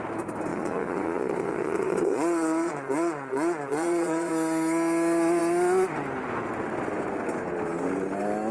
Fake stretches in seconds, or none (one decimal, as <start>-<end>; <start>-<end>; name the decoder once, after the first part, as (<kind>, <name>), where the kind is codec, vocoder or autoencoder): 0.5-4.3 (vocoder, Vocos)